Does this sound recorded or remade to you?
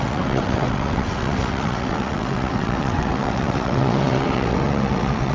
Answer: remade